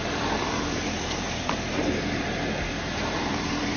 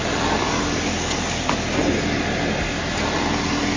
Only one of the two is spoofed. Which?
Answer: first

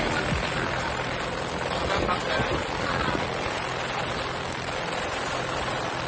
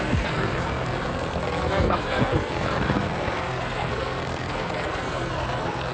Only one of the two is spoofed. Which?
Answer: second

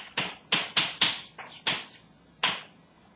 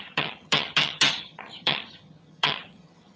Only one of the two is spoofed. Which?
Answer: second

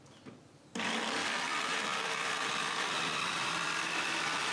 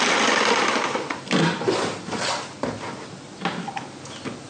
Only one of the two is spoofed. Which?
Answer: first